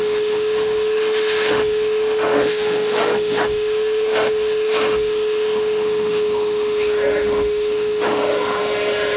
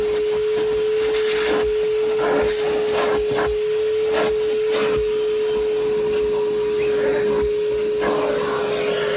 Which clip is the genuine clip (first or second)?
second